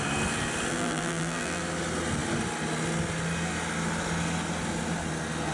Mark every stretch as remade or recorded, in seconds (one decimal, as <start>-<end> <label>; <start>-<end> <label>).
0.0-0.7 recorded; 0.7-1.6 remade; 1.6-5.5 recorded